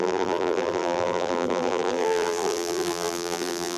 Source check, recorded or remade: remade